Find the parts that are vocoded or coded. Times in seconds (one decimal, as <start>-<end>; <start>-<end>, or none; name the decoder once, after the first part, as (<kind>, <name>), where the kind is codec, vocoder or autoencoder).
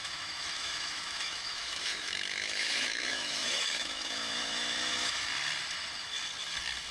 0.0-5.3 (autoencoder, DAC-VAE)